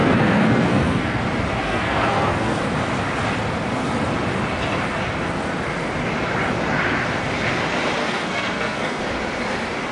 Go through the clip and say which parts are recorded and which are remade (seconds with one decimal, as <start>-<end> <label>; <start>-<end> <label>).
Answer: 0.0-1.2 remade; 1.2-1.6 recorded; 1.6-2.6 remade; 2.6-8.0 recorded; 8.0-9.0 remade; 9.0-9.9 recorded